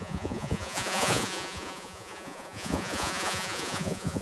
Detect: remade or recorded remade